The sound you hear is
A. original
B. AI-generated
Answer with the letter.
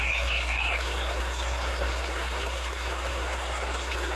B